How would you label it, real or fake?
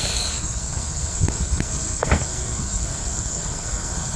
fake